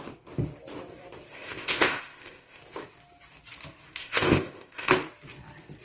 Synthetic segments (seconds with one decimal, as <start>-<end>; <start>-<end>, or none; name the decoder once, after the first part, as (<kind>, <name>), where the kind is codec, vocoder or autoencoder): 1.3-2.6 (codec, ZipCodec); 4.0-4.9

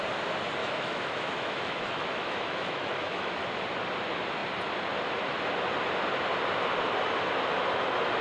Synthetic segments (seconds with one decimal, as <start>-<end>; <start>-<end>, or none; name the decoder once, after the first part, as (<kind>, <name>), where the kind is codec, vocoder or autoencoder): 0.6-3.5 (autoencoder, DAC-VAE)

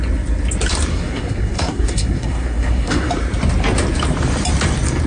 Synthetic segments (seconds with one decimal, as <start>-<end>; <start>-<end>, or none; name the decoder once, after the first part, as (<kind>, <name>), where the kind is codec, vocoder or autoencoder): 0.9-3.1 (codec, SNAC)

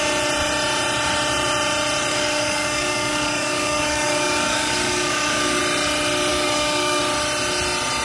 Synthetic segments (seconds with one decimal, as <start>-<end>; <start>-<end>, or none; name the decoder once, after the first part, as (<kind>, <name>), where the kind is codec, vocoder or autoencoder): 2.1-5.6 (codec, DAC); 6.3-7.0